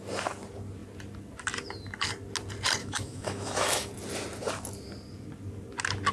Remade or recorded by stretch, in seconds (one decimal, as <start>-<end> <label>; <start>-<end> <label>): 0.0-2.8 recorded; 2.8-3.9 remade; 3.9-6.1 recorded